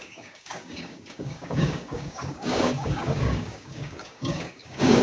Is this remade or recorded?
remade